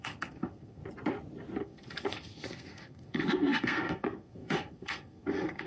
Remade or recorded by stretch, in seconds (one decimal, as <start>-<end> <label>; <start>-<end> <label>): 0.0-0.8 remade; 0.8-1.6 recorded; 1.6-5.7 remade